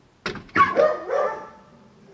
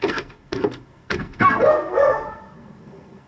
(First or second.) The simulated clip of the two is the second